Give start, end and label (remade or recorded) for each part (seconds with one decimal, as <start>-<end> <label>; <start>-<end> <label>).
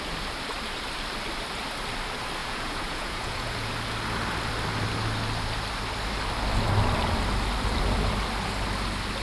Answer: 0.0-2.4 recorded; 2.4-3.7 remade; 3.7-9.2 recorded